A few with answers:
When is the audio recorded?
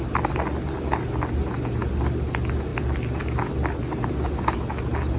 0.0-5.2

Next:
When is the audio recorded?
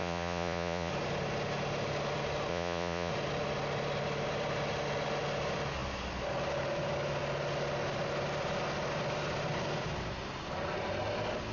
0.9-2.5; 3.1-11.5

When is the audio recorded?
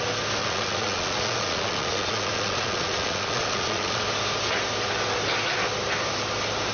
0.0-0.4; 4.0-6.7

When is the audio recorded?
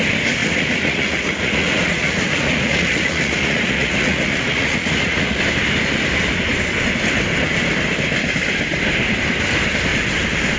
0.0-0.4; 5.4-10.6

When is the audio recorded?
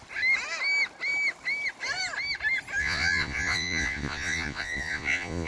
0.0-2.8